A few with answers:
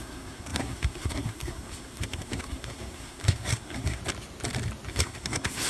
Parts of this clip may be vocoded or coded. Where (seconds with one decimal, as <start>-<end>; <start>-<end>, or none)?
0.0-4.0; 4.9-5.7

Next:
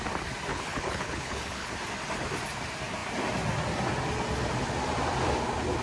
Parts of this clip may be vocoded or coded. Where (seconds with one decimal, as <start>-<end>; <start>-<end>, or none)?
0.5-1.7

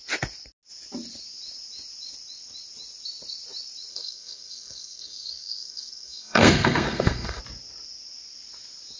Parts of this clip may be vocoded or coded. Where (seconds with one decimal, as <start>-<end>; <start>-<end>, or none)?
3.9-7.4

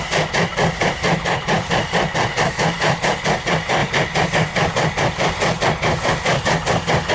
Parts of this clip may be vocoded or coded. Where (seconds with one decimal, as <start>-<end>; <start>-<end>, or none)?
0.5-2.4; 3.8-4.3

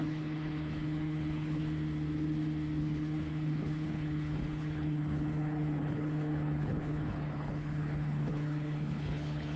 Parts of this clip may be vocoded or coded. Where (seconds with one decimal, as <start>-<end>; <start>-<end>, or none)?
0.0-1.6; 2.8-9.6